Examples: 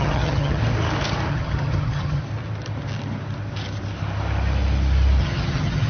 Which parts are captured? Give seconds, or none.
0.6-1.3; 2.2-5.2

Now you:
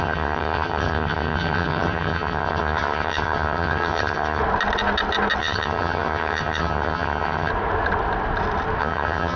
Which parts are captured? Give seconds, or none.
4.4-5.4; 7.5-8.8

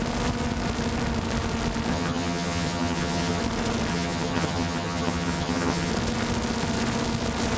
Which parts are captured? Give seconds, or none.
0.0-1.9; 3.4-3.9; 5.9-7.6

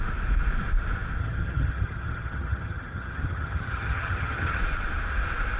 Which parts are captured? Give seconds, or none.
0.0-1.2; 4.6-5.6